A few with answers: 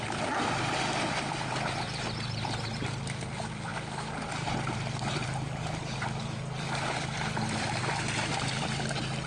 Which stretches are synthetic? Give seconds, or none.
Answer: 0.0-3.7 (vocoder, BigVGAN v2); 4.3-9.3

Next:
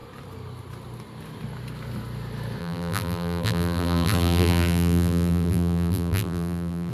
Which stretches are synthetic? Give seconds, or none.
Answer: 2.6-6.9 (vocoder, BigVGAN v2)

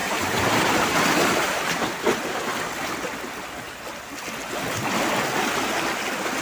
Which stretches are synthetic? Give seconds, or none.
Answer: 0.0-2.0 (vocoder, BigVGAN v2)

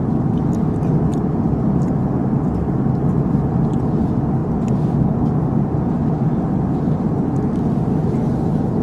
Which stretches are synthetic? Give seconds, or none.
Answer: 1.1-1.9 (vocoder, BigVGAN v2)

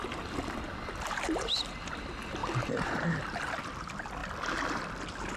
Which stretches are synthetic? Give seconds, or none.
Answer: none

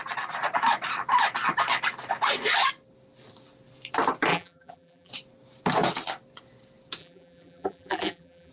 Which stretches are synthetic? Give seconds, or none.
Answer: 4.3-5.1 (vocoder, BigVGAN v2); 7.0-8.5

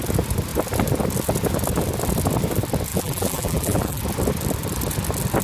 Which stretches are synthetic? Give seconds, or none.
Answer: 2.9-4.0 (vocoder, BigVGAN v2)

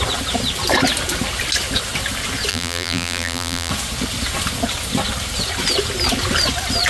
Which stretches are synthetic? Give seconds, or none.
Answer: 2.5-3.7 (vocoder, BigVGAN v2)